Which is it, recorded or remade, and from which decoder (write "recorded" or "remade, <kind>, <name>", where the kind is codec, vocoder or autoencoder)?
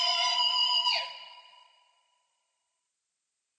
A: remade, vocoder, BigVGAN v2